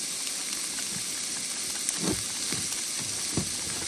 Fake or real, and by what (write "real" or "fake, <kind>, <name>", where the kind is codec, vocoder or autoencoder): real